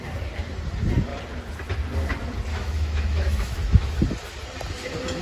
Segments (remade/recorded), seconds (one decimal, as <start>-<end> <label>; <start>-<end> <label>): 0.0-2.5 recorded; 2.5-3.9 remade; 3.9-5.2 recorded